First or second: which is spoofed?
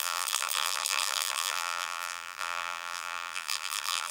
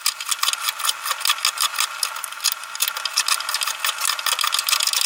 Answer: first